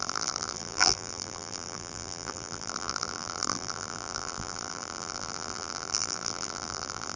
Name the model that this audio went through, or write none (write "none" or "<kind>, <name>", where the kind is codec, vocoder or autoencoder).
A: vocoder, BigVGAN v2